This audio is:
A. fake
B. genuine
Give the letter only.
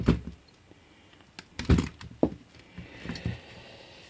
B